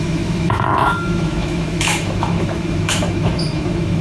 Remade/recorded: remade